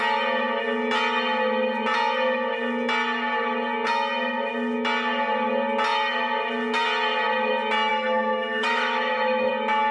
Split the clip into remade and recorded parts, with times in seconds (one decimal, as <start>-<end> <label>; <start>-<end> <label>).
0.0-7.9 recorded; 7.9-9.5 remade; 9.5-9.9 recorded